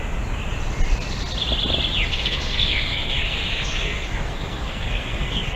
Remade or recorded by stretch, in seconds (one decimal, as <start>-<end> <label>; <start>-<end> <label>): 0.0-2.1 recorded; 2.1-5.6 remade